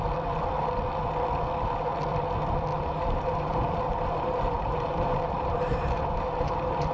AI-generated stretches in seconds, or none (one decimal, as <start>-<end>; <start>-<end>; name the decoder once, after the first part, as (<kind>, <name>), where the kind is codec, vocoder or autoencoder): 2.7-6.9 (vocoder, BigVGAN v2)